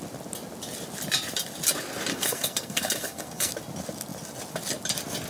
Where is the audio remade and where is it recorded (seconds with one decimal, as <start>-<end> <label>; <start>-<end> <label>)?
0.0-2.1 recorded; 2.1-3.5 remade; 3.5-5.3 recorded